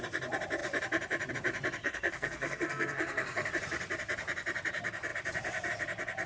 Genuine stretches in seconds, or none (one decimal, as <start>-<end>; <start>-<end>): 0.0-1.8; 3.5-6.3